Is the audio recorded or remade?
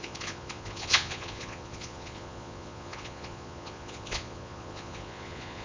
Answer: remade